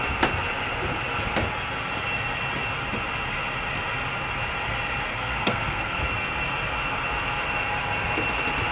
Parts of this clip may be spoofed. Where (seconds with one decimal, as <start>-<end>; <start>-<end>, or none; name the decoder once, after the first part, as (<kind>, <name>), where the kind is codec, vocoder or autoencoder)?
5.1-6.0 (codec, SNAC)